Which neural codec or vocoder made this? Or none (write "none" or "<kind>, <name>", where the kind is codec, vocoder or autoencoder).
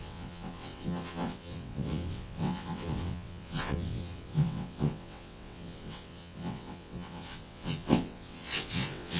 vocoder, WaveNeXt